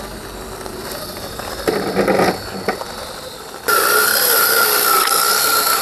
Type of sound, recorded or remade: recorded